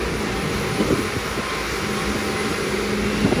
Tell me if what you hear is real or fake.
real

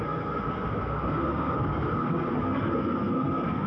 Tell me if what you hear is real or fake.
fake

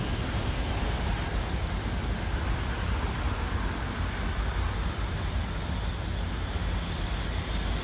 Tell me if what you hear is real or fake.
real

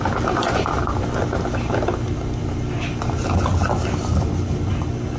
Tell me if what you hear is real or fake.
real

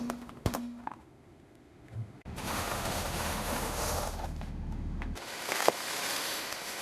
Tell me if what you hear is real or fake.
fake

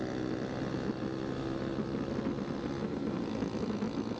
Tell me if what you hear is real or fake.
real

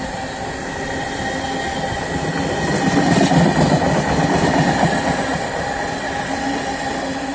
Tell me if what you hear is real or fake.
real